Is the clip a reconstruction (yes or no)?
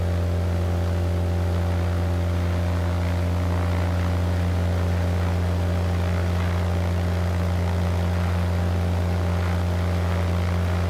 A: no